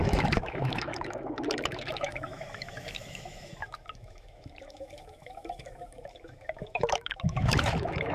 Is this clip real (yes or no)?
no